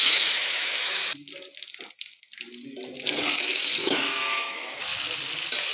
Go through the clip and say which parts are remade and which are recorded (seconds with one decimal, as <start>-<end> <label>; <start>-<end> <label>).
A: 0.0-1.0 remade; 1.0-3.4 recorded; 3.4-4.9 remade; 4.9-5.7 recorded